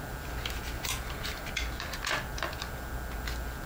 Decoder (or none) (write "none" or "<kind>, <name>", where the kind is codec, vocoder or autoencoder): none